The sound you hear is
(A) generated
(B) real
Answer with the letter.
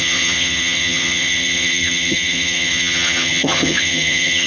A